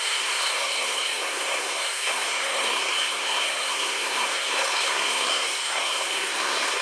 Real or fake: fake